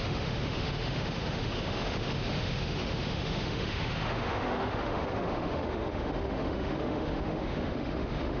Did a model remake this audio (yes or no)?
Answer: yes